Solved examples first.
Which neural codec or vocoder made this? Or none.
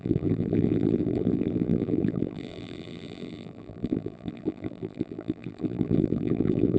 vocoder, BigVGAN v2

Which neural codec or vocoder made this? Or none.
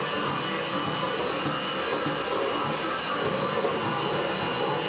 none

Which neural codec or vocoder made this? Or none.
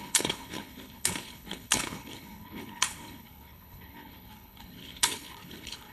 codec, HILCodec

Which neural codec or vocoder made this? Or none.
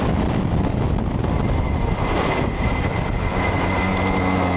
none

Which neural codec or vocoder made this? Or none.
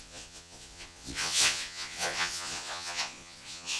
vocoder, Vocos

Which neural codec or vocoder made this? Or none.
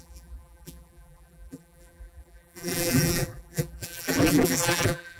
vocoder, BigVGAN v2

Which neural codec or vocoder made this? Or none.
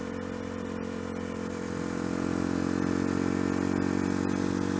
none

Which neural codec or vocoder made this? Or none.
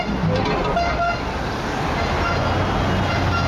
none